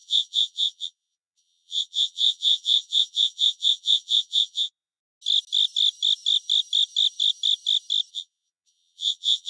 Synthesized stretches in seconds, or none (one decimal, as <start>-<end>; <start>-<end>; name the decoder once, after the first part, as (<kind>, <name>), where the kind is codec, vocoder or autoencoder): 0.0-5.0 (vocoder, Vocos); 8.1-9.5